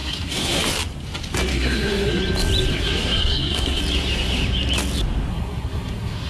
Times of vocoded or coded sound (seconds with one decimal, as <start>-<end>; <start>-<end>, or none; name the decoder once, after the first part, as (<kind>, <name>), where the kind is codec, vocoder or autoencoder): 0.0-0.6 (codec, SNAC); 1.5-2.2; 2.7-3.8; 5.3-6.3